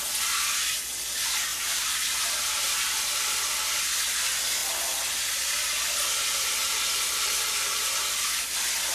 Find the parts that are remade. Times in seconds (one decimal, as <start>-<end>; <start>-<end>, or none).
1.5-3.8